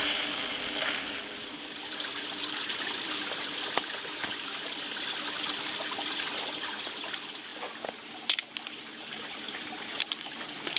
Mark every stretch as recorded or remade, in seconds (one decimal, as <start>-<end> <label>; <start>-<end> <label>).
0.0-10.8 remade